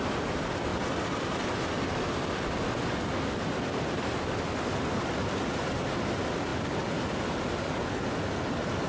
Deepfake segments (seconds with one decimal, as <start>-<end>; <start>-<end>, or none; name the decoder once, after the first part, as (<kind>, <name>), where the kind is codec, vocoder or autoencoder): none